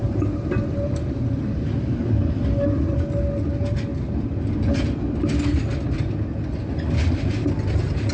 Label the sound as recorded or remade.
recorded